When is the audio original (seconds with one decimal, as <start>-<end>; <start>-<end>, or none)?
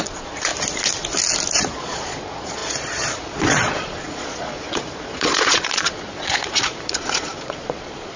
0.5-1.7